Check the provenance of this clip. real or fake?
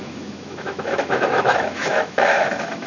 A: fake